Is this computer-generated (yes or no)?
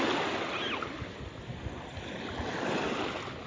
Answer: no